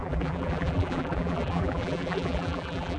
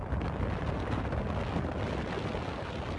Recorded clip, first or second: second